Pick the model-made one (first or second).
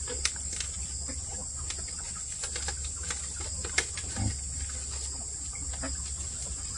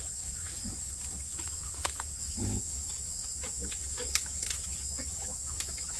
second